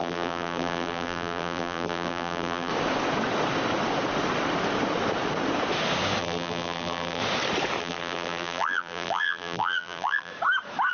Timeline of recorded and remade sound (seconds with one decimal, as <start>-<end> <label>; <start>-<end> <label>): 0.0-2.7 remade; 2.7-6.2 recorded; 6.2-7.2 remade; 7.2-7.8 recorded; 7.8-10.3 remade; 10.3-10.9 recorded